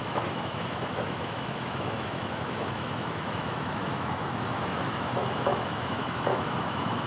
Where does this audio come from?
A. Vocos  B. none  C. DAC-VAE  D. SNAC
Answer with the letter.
C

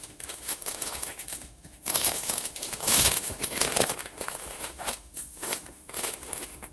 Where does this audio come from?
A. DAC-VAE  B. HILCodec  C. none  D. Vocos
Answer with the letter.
A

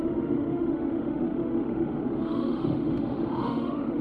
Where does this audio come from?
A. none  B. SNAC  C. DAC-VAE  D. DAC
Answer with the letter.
C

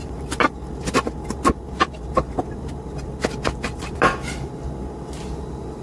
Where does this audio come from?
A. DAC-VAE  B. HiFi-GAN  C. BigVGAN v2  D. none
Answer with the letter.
D